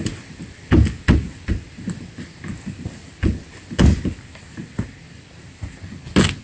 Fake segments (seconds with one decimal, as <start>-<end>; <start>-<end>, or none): none